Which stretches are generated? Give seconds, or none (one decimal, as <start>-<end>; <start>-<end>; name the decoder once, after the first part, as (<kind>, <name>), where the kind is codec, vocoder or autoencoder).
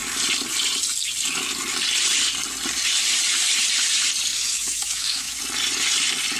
4.3-5.4 (autoencoder, DAC-VAE)